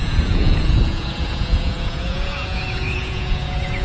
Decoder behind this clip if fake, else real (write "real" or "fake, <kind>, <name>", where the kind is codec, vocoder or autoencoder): fake, vocoder, Vocos